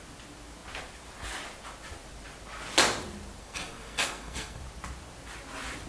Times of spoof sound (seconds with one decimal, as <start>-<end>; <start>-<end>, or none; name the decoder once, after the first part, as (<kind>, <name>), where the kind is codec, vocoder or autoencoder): 3.4-4.6 (codec, SNAC)